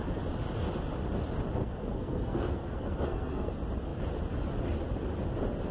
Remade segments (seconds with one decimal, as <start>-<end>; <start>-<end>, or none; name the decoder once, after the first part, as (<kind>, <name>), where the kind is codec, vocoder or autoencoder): 1.6-3.5 (codec, SNAC)